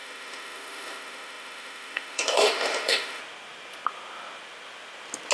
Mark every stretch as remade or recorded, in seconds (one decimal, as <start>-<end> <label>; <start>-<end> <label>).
0.0-3.2 remade; 3.2-5.3 recorded

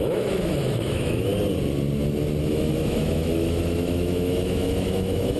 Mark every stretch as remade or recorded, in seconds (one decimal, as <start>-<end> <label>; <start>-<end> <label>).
0.0-1.3 remade; 1.3-2.5 recorded; 2.5-5.4 remade

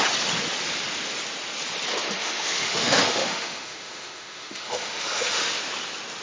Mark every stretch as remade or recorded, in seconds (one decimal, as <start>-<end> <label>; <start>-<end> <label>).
0.0-1.9 recorded; 1.9-5.6 remade; 5.6-6.2 recorded

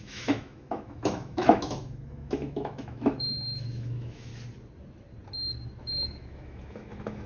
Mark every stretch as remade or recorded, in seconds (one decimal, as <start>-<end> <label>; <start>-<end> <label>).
0.0-4.3 remade; 4.3-5.8 recorded; 5.8-7.3 remade

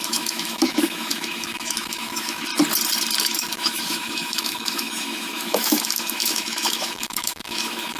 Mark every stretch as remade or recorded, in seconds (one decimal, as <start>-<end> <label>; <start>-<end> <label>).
0.0-2.5 remade; 2.5-3.2 recorded; 3.2-8.0 remade